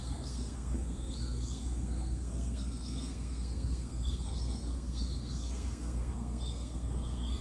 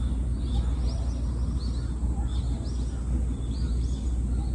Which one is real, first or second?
second